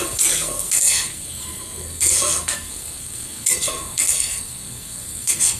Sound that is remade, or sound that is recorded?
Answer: remade